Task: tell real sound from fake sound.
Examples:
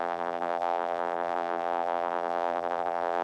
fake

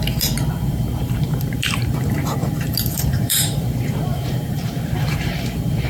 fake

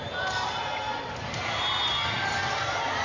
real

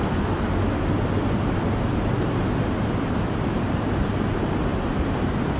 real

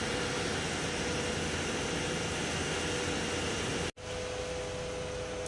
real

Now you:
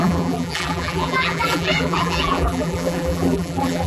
fake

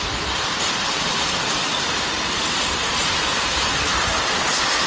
fake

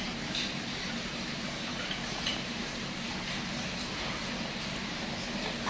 fake